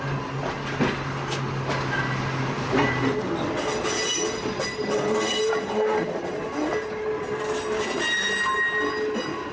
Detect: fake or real real